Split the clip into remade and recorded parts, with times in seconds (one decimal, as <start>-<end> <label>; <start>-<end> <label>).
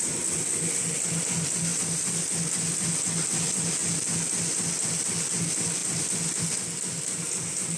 0.0-7.8 recorded